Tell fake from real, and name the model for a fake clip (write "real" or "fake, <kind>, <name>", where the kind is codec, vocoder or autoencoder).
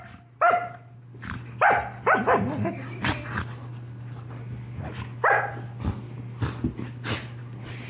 real